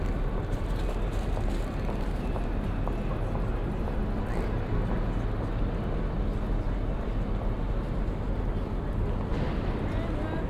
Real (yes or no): yes